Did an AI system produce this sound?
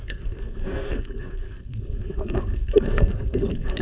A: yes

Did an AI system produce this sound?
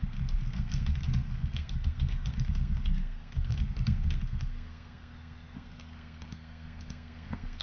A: yes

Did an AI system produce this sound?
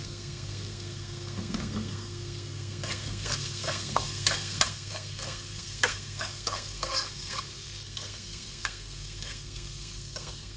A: yes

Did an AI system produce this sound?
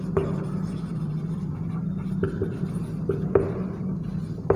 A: no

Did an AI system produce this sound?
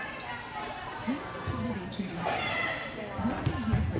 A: no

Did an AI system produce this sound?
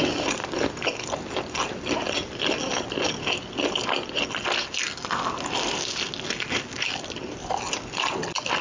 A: no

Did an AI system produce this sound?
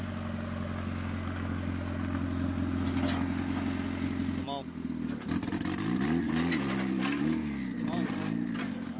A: no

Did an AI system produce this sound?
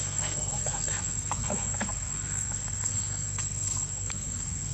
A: yes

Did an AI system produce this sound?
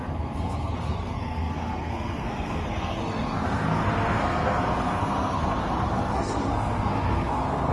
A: yes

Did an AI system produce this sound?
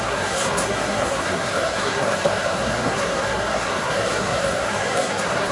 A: yes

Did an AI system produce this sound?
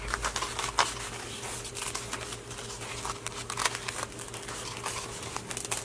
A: no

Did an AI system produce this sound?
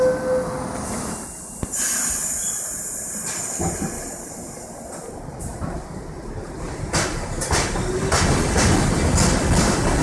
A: no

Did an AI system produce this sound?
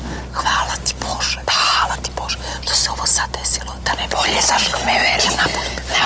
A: no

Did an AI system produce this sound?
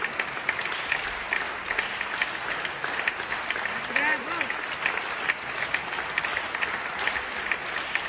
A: no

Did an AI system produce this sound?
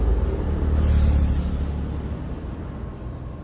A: no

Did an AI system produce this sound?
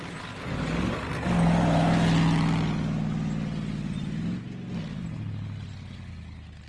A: no